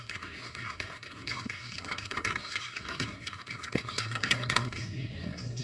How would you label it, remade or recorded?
remade